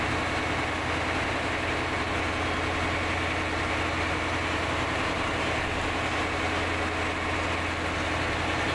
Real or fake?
real